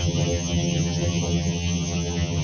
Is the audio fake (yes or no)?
yes